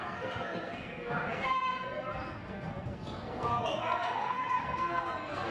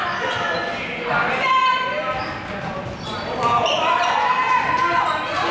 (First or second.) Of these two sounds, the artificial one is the first